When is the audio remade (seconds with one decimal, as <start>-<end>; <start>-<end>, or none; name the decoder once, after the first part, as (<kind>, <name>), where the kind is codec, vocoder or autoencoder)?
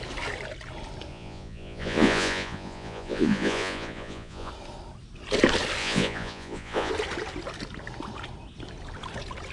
1.1-4.5 (vocoder, Vocos); 5.8-6.9